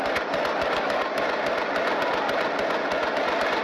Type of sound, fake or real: real